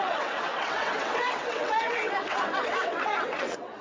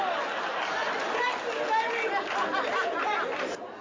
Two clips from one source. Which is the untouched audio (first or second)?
second